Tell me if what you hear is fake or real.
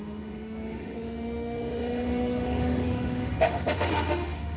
fake